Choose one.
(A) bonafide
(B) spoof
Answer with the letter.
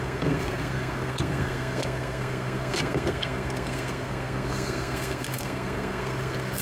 B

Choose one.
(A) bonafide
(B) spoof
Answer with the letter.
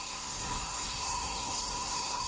B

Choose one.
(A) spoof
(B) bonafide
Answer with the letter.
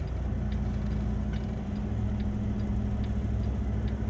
B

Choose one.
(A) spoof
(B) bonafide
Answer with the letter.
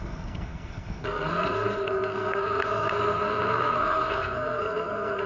A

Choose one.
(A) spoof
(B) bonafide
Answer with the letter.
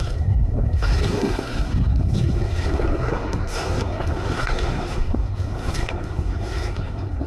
A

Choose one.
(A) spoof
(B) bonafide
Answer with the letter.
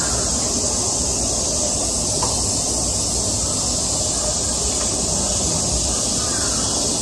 B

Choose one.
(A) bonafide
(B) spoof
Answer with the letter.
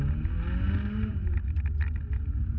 A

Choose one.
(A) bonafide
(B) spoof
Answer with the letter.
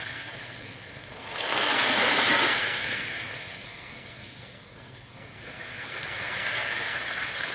B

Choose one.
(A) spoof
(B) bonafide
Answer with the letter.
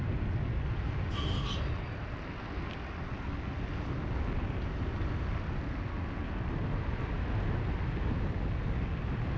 B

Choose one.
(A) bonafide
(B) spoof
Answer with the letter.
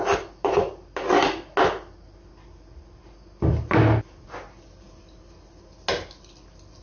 A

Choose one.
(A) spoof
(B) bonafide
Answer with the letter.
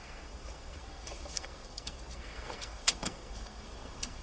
A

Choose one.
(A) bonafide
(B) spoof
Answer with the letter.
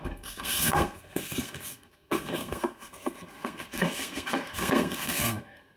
B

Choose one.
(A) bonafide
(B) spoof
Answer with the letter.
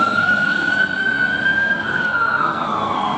B